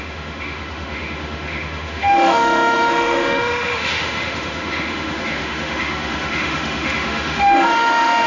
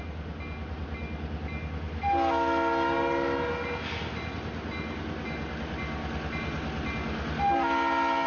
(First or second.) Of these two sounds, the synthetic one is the first